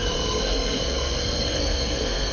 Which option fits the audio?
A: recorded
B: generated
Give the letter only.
B